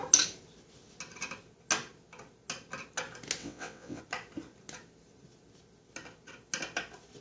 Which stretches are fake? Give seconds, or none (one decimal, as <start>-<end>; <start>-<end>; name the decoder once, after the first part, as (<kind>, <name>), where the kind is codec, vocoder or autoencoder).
3.4-4.0 (vocoder, WaveNeXt)